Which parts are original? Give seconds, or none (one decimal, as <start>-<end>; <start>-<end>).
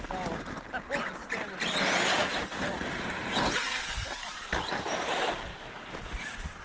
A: 0.0-2.3; 6.0-6.6